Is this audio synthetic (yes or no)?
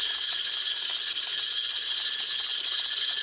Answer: no